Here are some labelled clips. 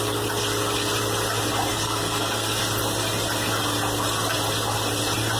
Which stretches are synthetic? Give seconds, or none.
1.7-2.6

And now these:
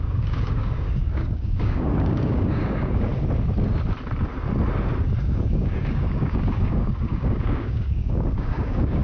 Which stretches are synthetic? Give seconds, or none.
0.0-3.1; 5.2-9.0

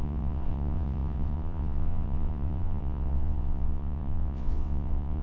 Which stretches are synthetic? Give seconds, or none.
0.0-5.2